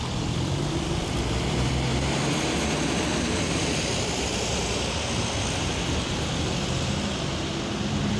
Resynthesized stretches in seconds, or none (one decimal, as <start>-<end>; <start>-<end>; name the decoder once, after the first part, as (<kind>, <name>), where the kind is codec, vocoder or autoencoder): 0.0-1.9 (vocoder, BigVGAN v2); 5.6-8.2